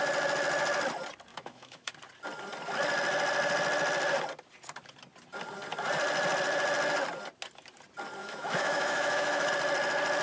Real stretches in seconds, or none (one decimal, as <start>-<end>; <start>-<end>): 0.0-1.3; 1.9-8.2; 9.5-10.2